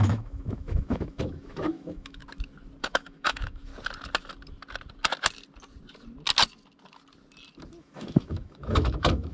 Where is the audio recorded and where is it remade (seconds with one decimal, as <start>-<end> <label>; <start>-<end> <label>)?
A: 0.0-2.2 remade; 2.2-2.8 recorded; 2.8-3.7 remade; 3.7-7.8 recorded; 7.8-9.3 remade